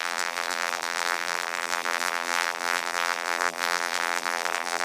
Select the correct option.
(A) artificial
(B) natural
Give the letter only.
A